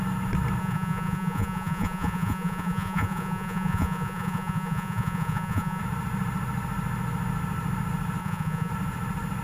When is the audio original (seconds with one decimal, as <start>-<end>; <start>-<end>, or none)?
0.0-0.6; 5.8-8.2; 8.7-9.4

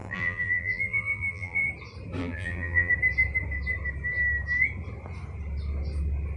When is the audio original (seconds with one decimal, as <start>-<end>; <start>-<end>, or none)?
1.7-2.2; 2.9-6.4

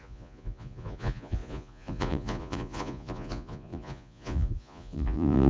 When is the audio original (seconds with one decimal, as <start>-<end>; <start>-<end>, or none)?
none